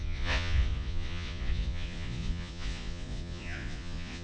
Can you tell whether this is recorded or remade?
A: remade